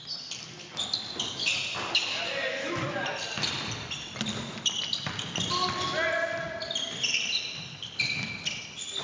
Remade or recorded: recorded